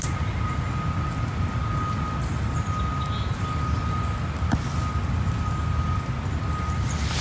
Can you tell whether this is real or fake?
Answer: real